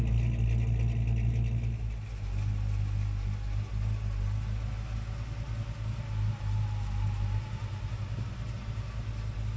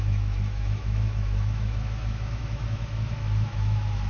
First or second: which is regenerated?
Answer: second